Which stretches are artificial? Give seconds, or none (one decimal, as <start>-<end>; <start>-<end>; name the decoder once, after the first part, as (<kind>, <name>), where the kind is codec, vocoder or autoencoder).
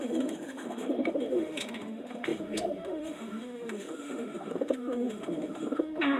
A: 0.0-6.2 (autoencoder, DAC-VAE)